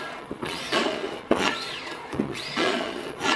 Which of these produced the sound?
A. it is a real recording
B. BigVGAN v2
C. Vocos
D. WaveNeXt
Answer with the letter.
C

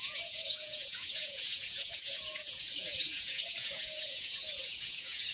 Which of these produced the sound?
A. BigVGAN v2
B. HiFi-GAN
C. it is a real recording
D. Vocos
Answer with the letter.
D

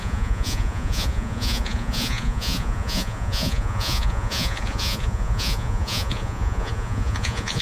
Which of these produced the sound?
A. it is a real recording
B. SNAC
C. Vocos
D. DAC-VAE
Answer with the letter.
C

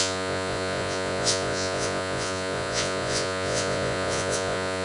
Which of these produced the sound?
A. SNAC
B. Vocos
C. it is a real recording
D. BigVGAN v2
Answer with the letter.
B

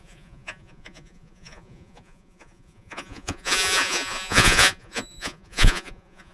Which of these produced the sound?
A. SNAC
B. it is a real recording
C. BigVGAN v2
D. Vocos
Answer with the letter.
D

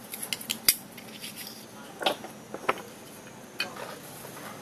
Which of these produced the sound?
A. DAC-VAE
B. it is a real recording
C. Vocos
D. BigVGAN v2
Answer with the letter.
B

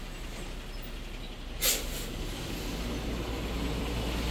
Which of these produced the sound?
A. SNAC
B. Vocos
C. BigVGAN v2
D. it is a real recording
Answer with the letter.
D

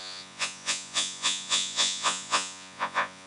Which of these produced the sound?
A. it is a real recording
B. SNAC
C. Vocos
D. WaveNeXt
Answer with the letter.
C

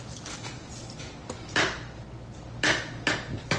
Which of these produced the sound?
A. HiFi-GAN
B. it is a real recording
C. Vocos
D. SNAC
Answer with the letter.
B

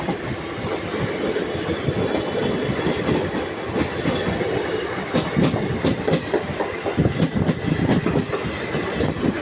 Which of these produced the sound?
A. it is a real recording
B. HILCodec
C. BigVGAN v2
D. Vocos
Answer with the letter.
A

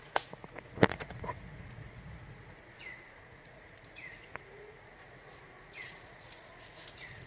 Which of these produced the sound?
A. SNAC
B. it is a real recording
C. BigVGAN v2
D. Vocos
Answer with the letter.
D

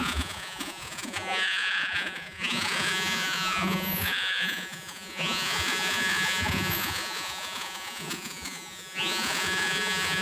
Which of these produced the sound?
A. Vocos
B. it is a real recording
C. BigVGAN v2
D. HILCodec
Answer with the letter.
A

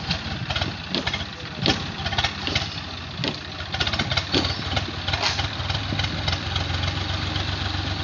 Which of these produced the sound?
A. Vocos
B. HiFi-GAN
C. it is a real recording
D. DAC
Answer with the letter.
C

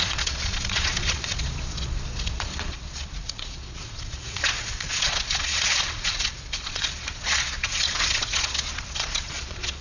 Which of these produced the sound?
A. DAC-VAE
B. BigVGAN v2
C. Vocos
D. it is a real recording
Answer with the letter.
C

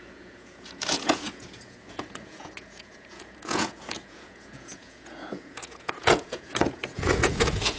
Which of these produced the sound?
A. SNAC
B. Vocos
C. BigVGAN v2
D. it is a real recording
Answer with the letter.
B